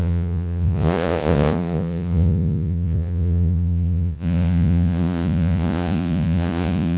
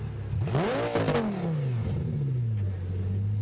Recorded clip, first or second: second